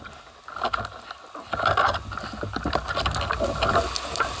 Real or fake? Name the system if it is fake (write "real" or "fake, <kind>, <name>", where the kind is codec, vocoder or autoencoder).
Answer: real